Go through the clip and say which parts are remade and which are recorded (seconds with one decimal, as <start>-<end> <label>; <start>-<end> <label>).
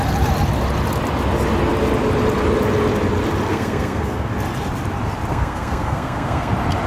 0.0-3.5 recorded; 3.5-4.3 remade; 4.3-5.3 recorded; 5.3-6.5 remade; 6.5-6.9 recorded